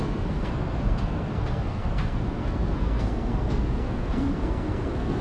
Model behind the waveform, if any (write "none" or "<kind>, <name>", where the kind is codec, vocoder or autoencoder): codec, SNAC